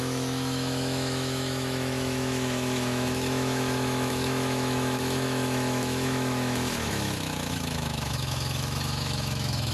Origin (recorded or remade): remade